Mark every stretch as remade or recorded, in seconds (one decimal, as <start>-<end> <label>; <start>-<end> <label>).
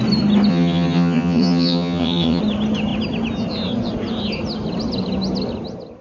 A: 0.0-0.5 recorded; 0.5-2.4 remade; 2.4-6.0 recorded